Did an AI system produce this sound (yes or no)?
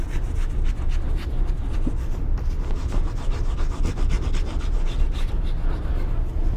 no